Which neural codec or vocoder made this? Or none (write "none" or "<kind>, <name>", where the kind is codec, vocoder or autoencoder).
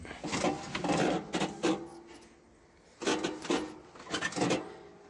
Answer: none